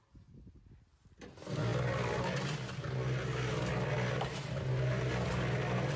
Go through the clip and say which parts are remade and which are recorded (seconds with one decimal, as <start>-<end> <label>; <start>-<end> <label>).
0.0-6.0 recorded